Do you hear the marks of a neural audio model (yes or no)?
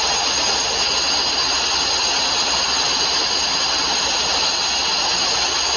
no